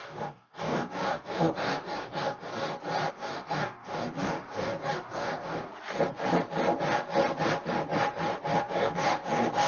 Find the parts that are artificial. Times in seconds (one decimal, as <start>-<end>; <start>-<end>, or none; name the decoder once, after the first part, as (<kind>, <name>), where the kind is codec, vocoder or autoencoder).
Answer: 0.0-2.5 (codec, DAC); 3.1-5.7; 8.6-9.7

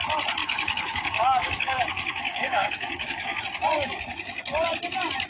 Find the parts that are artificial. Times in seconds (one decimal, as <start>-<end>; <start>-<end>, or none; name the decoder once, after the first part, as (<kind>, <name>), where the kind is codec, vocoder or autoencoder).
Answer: 0.4-3.4 (codec, DAC)

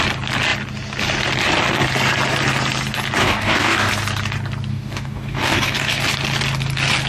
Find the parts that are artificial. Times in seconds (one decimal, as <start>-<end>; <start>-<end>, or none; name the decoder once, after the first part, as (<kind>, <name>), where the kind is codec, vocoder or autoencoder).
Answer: 3.2-3.9 (codec, DAC); 4.7-6.0

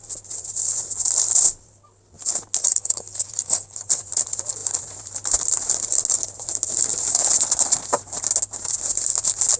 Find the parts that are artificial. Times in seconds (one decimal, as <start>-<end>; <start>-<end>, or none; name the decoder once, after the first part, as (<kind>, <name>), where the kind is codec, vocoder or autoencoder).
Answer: 2.6-4.0 (codec, DAC)

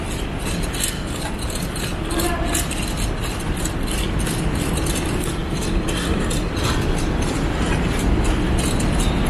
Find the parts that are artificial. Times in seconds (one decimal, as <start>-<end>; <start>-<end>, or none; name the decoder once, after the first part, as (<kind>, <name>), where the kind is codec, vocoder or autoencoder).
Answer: none

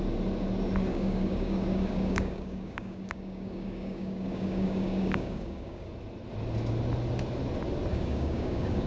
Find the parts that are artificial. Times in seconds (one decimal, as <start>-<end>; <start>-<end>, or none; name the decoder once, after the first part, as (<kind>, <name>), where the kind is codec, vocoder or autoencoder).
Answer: 0.9-5.9 (codec, DAC); 7.9-8.9